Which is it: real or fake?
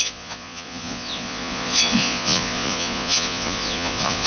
fake